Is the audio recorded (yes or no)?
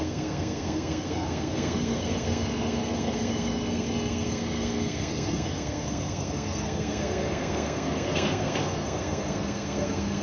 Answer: no